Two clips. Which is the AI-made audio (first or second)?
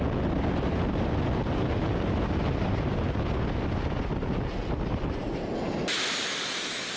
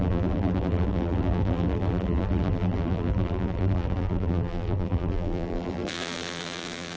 second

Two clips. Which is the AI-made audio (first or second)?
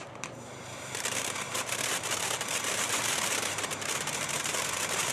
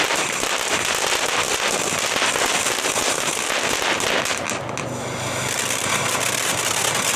first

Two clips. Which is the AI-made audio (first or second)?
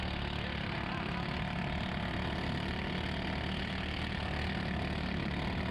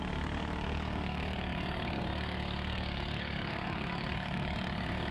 second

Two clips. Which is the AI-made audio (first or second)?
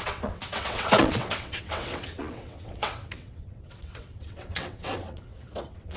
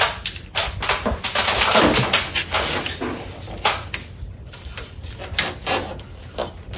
first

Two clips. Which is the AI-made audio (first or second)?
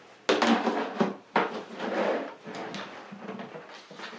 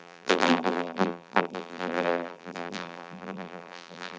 second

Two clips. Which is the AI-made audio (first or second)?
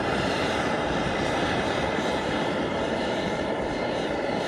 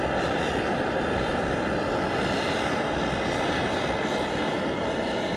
first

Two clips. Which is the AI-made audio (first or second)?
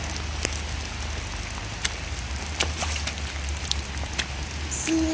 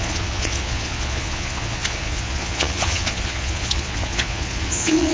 second